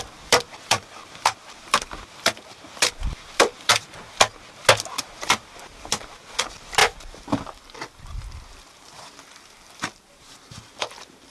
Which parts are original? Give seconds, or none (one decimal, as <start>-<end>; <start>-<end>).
3.7-4.9